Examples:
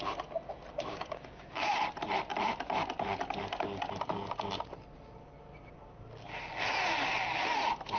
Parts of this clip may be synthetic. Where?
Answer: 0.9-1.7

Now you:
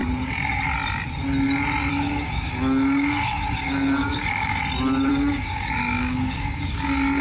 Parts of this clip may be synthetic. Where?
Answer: 1.9-4.6; 5.1-7.2

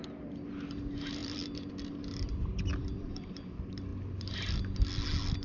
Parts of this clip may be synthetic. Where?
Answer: 1.2-1.7; 2.7-3.4

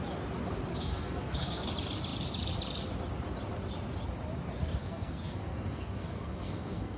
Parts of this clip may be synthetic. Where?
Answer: 0.7-1.7; 4.8-7.0

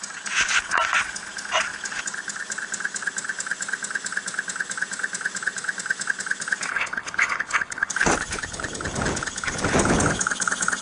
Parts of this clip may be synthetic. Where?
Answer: 6.7-7.9

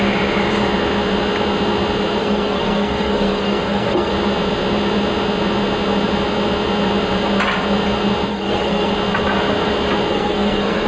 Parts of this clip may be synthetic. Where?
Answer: 2.2-4.1; 8.3-8.9; 10.1-10.9

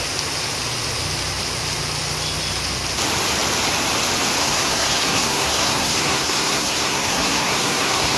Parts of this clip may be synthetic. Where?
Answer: 4.4-8.2

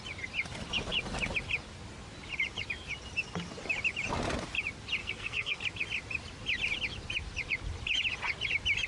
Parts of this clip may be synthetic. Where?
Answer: 5.0-5.6